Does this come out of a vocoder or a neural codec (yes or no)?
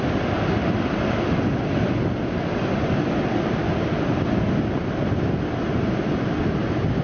no